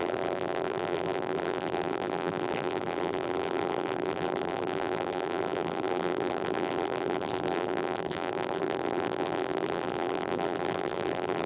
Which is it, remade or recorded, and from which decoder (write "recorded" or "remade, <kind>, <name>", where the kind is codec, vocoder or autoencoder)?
remade, vocoder, BigVGAN v2